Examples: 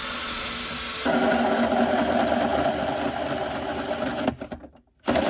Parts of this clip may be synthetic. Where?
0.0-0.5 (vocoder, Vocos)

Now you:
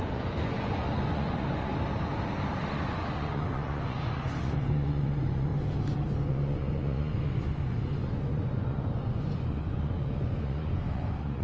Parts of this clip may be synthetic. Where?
0.0-1.7 (vocoder, Vocos); 2.6-5.5; 6.3-11.4

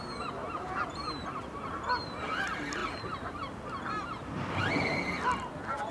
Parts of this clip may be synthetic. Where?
none

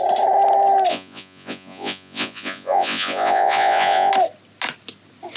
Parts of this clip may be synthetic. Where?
0.9-4.1 (vocoder, Vocos)

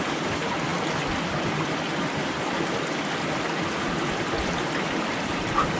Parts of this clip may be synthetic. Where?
none